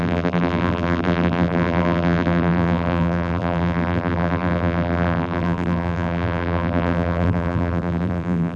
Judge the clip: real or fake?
fake